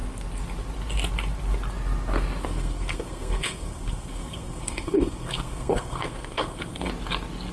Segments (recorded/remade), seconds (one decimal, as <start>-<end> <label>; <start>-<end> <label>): 0.0-2.4 recorded; 2.4-6.9 remade; 6.9-7.5 recorded